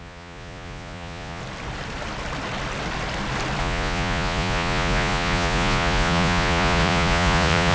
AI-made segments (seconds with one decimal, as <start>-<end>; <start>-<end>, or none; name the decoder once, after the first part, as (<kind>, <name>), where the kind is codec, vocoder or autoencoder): 0.0-1.4 (vocoder, Vocos); 3.6-7.7

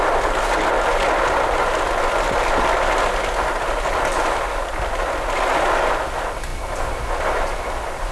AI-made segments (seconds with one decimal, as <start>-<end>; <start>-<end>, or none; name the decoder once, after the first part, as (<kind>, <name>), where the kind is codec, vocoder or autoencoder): none

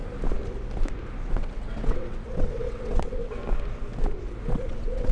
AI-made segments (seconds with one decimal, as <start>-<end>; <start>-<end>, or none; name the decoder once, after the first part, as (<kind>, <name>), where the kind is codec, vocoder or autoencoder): 1.3-3.4 (vocoder, WaveNeXt); 4.4-5.1

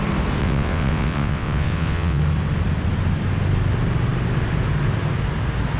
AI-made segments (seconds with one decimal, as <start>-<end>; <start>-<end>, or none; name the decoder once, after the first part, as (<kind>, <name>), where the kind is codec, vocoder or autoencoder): 0.4-2.2 (vocoder, WaveNeXt)

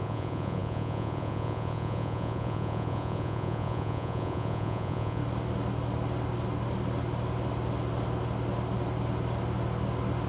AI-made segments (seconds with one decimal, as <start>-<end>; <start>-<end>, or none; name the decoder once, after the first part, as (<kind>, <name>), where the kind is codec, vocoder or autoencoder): 0.0-5.2 (vocoder, Vocos)

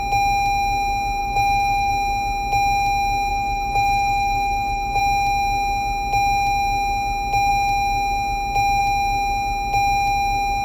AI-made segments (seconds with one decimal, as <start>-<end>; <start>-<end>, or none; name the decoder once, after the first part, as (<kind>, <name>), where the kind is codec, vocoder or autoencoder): 1.2-1.9 (autoencoder, DAC-VAE); 3.3-5.0

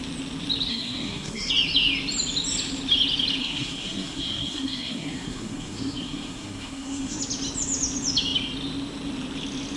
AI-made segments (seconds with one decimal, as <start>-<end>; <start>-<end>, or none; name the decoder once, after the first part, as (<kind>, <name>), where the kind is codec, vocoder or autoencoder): 0.7-1.5 (codec, SNAC); 3.4-7.2